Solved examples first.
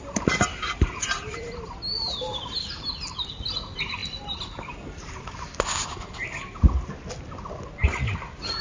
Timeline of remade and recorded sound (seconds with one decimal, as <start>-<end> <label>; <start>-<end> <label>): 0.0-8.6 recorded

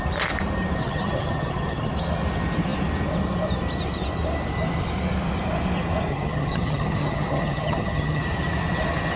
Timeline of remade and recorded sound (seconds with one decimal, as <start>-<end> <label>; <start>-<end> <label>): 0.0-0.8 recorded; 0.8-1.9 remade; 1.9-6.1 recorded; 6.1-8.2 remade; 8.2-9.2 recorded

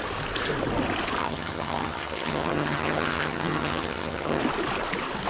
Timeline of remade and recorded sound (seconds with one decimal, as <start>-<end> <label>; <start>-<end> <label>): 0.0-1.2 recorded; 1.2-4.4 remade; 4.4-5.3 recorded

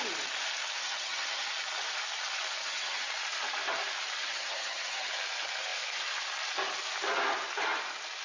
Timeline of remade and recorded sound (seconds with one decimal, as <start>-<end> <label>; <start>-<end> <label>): 0.0-0.8 recorded; 0.8-1.5 remade; 1.5-2.6 recorded; 2.6-3.1 remade; 3.1-4.2 recorded; 4.2-5.1 remade; 5.1-8.2 recorded

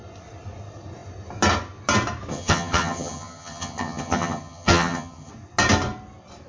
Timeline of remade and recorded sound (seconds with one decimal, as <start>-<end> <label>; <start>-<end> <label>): 0.0-2.3 recorded; 2.3-5.3 remade; 5.3-6.5 recorded

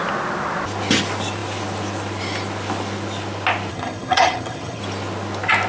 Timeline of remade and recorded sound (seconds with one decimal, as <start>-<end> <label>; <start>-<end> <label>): 0.0-3.7 recorded; 3.7-4.8 remade; 4.8-5.7 recorded

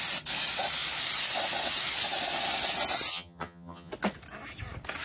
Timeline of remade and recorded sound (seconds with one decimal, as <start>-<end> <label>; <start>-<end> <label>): 0.0-3.1 recorded; 3.1-3.9 remade; 3.9-5.0 recorded